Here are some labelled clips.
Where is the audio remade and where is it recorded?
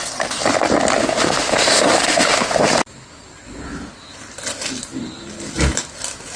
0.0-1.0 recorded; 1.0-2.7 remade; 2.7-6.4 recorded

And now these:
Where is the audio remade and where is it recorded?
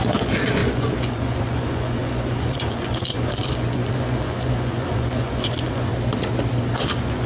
0.0-5.9 remade; 5.9-6.7 recorded; 6.7-7.3 remade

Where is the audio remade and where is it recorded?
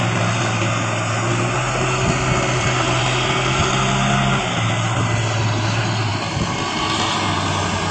0.0-7.9 recorded